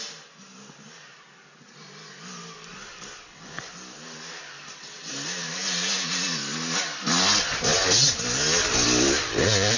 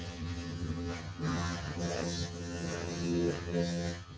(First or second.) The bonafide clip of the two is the first